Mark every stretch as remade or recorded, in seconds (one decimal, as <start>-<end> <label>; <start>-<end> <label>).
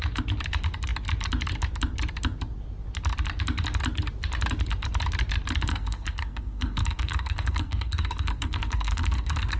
0.0-5.7 recorded; 5.7-9.6 remade